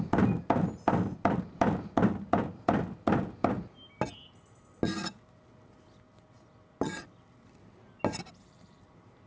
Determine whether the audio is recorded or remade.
recorded